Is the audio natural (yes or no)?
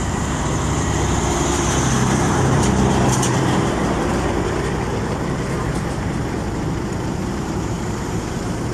no